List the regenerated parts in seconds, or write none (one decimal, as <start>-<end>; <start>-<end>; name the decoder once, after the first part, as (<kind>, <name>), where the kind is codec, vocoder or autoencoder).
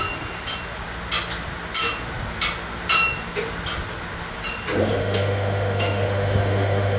5.0-7.0 (autoencoder, DAC-VAE)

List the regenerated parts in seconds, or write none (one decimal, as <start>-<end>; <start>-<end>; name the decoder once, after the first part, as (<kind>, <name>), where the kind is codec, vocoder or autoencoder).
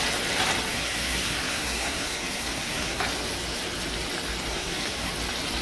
0.7-3.0 (codec, SNAC); 4.5-5.1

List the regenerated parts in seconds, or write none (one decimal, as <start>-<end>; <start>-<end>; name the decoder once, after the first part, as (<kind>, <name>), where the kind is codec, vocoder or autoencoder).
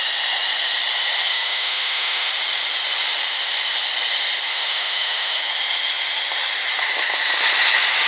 1.3-2.3 (autoencoder, DAC-VAE); 4.5-5.4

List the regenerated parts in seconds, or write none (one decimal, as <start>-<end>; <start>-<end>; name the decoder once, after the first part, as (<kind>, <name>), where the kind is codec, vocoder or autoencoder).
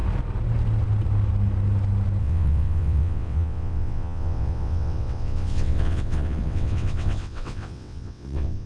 2.2-8.7 (vocoder, WaveNeXt)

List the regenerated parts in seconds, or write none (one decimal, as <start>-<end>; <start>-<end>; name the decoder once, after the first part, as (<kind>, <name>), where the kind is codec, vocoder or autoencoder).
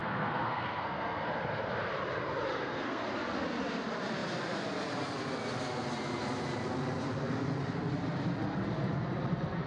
0.0-1.3 (codec, SNAC); 2.5-3.0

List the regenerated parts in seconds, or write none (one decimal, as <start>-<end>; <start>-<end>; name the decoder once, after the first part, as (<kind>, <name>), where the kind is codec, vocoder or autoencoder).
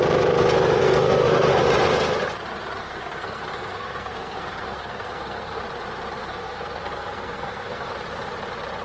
0.8-1.5 (codec, SNAC); 2.8-5.6; 6.2-7.9